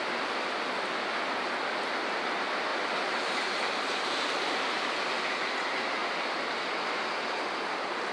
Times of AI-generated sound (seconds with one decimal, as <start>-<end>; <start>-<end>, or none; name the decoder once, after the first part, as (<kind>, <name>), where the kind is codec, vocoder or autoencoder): 2.7-5.0 (vocoder, BigVGAN v2)